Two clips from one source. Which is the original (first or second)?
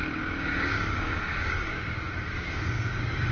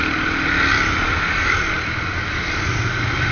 second